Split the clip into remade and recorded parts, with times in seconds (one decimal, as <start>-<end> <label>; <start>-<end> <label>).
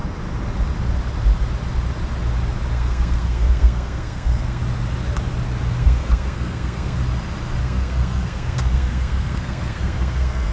0.0-2.7 recorded; 2.7-4.6 remade; 4.6-5.8 recorded; 5.8-7.0 remade; 7.0-7.6 recorded; 7.6-10.5 remade